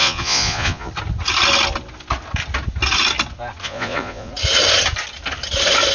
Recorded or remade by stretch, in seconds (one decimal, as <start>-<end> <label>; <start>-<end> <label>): 0.0-0.9 remade; 0.9-3.6 recorded; 3.6-4.3 remade; 4.3-5.9 recorded